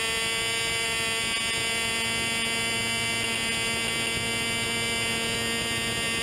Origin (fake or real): real